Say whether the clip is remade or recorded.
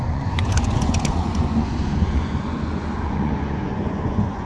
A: remade